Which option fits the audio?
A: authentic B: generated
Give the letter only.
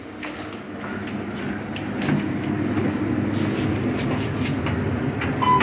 A